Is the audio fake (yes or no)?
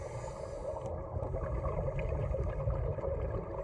no